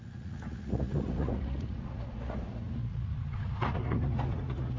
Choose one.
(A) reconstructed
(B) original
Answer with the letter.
A